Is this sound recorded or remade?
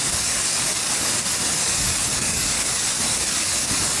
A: remade